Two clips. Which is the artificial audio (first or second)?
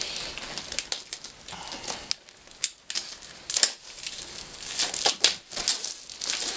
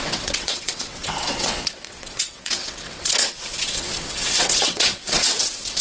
second